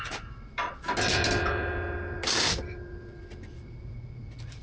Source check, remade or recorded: recorded